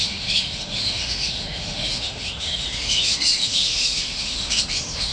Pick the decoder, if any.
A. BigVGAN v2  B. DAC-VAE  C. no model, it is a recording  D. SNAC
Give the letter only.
B